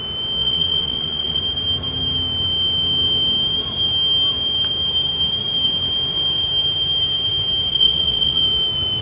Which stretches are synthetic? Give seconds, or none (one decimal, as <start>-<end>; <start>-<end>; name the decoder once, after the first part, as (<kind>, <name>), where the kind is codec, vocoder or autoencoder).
0.4-1.4 (vocoder, Vocos); 7.7-8.4